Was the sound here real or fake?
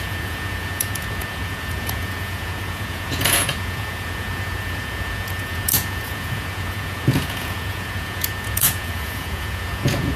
fake